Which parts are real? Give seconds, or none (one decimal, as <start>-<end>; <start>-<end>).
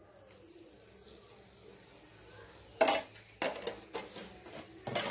0.0-5.1